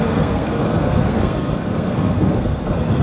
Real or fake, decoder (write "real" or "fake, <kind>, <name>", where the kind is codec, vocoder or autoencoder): fake, codec, SNAC